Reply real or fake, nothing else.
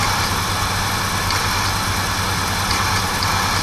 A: real